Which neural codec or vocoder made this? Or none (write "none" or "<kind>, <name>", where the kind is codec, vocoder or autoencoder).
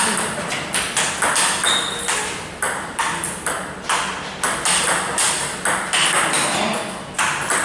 none